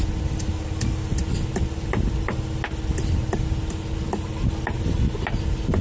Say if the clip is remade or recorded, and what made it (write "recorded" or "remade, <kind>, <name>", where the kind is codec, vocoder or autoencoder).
recorded